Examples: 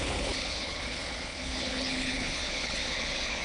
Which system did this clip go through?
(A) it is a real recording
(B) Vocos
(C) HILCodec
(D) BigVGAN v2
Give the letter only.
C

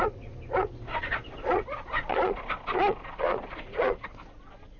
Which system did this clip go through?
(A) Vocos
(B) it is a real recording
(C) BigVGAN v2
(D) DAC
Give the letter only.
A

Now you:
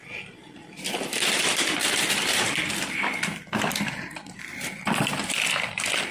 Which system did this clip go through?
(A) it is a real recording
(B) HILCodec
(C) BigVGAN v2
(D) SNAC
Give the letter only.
C